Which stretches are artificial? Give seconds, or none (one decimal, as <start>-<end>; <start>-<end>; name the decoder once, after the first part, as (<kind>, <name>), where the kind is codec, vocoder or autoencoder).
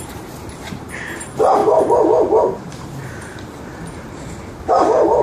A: 0.0-1.6 (vocoder, BigVGAN v2); 4.7-5.2